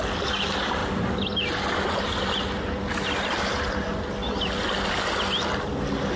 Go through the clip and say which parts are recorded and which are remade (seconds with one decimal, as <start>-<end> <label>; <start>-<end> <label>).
0.0-6.2 recorded